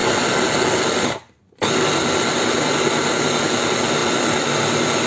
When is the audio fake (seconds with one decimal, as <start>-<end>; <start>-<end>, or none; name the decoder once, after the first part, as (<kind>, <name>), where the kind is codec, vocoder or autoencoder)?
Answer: none